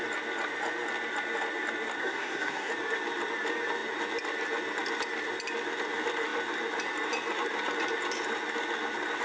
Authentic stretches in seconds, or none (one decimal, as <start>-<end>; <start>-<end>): 0.0-2.0; 2.7-9.2